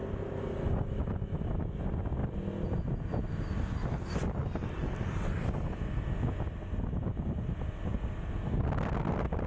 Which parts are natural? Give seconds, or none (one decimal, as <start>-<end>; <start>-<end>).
0.0-9.5